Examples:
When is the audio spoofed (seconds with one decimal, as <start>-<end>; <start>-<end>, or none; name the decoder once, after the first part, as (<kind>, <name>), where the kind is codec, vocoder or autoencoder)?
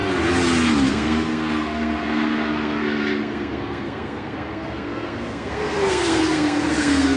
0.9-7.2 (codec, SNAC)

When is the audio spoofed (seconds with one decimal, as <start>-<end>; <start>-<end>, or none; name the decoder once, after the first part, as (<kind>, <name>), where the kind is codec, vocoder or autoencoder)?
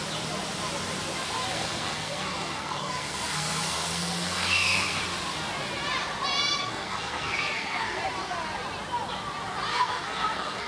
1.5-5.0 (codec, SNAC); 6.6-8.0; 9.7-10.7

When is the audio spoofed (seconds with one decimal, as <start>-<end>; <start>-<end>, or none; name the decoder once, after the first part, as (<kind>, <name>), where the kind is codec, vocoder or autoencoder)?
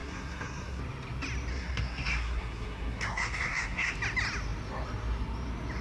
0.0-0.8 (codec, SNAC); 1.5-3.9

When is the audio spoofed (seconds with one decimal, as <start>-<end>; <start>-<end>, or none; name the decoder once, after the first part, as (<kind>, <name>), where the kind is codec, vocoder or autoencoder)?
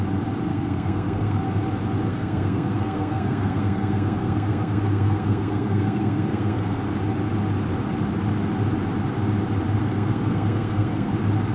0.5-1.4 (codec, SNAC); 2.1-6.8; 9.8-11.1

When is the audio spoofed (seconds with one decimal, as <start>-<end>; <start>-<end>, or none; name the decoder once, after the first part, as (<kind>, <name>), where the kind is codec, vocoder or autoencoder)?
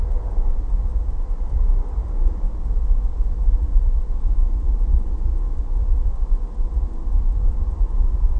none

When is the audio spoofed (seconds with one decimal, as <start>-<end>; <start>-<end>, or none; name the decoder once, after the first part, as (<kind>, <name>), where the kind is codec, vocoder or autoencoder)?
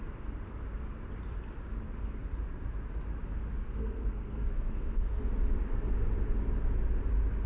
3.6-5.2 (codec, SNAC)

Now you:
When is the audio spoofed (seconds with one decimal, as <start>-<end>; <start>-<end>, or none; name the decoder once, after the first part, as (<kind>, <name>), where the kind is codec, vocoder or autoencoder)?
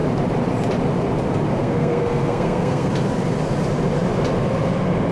1.6-2.9 (codec, SNAC)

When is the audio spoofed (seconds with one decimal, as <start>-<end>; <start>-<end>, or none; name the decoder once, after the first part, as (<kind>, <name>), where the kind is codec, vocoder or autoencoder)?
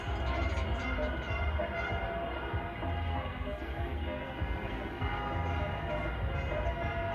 3.1-5.5 (codec, SNAC)